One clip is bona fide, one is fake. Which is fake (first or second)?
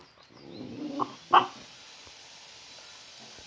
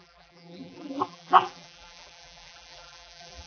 second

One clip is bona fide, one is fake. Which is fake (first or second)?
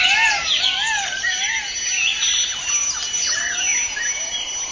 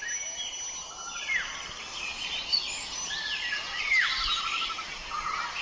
first